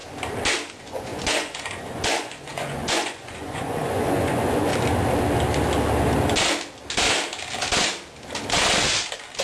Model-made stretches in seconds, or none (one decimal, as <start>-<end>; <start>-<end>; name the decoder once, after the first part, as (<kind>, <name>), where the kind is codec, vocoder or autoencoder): 0.7-4.7 (vocoder, Vocos)